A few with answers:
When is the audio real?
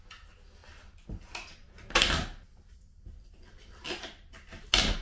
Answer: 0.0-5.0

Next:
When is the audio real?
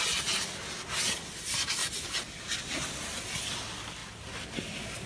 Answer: 0.0-5.1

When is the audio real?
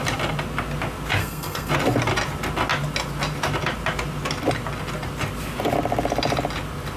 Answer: 0.0-1.2; 1.7-7.0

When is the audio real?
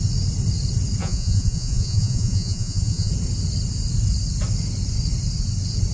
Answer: 0.0-1.0; 3.1-5.9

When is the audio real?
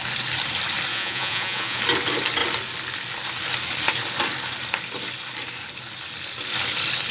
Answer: 0.0-0.9; 1.8-7.1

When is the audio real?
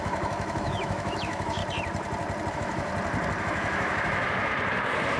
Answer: 1.6-2.5; 2.9-3.4; 4.5-5.2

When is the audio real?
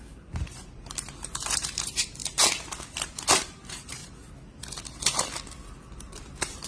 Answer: 2.2-3.4; 4.0-5.9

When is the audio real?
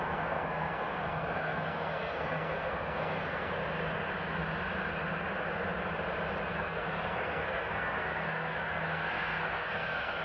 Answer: 3.6-6.5